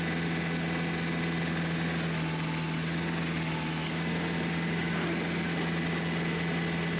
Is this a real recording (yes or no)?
yes